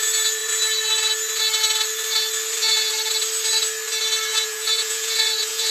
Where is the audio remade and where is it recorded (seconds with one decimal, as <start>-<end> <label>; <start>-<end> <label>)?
0.0-4.3 recorded; 4.3-5.7 remade